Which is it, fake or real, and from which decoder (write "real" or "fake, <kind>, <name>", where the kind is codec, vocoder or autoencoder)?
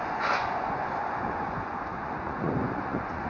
fake, vocoder, Vocos